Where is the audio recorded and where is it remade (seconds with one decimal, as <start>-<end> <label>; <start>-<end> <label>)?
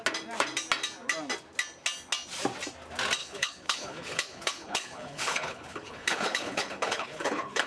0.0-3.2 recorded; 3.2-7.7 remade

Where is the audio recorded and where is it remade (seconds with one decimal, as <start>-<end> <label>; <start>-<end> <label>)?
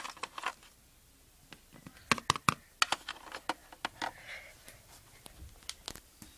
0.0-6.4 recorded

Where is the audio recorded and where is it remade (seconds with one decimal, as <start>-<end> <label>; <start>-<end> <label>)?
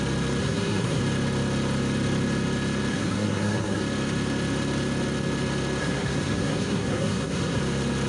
0.0-0.4 recorded; 0.4-1.0 remade; 1.0-2.9 recorded; 2.9-3.8 remade; 3.8-5.8 recorded; 5.8-7.6 remade; 7.6-8.1 recorded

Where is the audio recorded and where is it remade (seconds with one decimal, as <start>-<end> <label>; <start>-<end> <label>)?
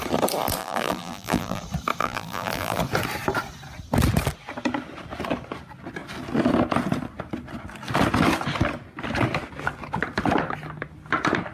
0.0-0.6 recorded; 0.6-1.6 remade; 1.6-2.0 recorded; 2.0-2.8 remade; 2.8-11.5 recorded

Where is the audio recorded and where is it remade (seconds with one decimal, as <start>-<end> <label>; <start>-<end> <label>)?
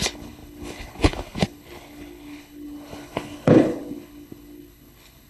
0.0-5.3 remade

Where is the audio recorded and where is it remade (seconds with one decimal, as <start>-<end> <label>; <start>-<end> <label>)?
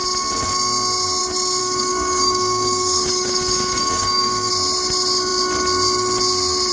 0.0-1.6 recorded; 1.6-4.5 remade; 4.5-6.7 recorded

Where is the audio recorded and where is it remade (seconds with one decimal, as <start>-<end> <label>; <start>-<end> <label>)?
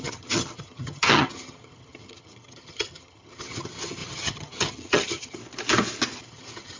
0.0-5.4 remade; 5.4-6.2 recorded; 6.2-6.8 remade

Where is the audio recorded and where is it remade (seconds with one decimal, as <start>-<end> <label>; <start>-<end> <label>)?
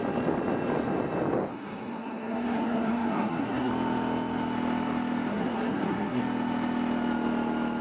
0.0-1.5 recorded; 1.5-3.7 remade; 3.7-5.3 recorded; 5.3-6.2 remade; 6.2-7.8 recorded